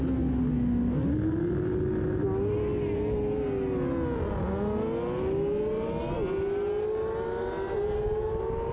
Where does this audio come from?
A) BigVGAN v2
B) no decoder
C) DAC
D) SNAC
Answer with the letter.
B